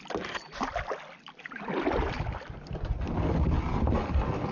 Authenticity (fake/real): real